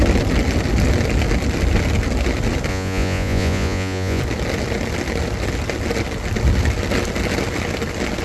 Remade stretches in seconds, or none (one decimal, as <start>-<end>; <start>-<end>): 2.7-4.2